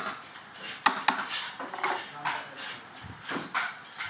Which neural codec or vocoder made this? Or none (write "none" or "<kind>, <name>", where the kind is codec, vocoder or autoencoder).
none